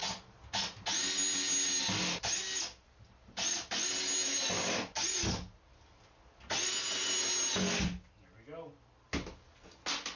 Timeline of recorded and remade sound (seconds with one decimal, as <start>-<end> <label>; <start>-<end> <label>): 0.0-10.2 recorded